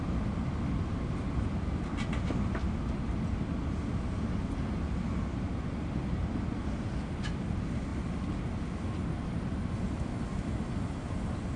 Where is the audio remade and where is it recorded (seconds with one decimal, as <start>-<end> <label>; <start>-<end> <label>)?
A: 0.0-11.6 recorded